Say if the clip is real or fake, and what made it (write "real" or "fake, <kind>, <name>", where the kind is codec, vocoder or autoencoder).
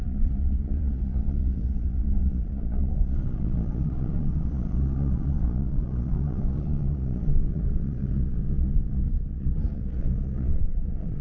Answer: fake, vocoder, Vocos